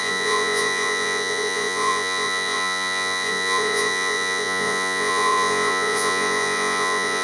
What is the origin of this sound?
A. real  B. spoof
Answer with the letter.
B